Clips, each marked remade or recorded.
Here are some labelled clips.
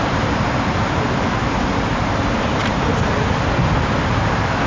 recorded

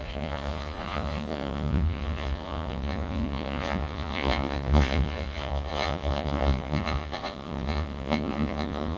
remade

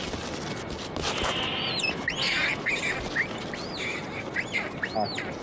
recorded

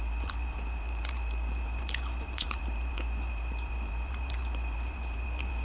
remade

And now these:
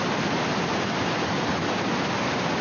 recorded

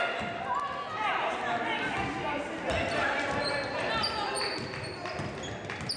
recorded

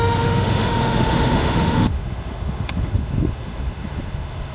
remade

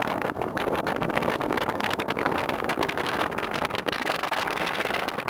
remade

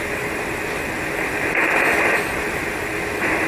recorded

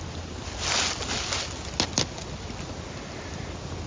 recorded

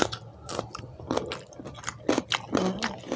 recorded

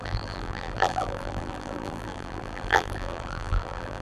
remade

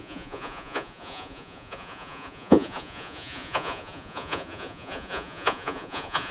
remade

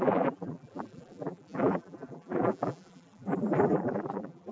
remade